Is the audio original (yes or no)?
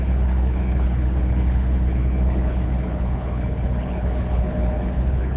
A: no